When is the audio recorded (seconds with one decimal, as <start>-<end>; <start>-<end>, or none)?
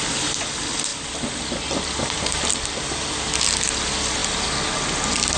0.0-5.4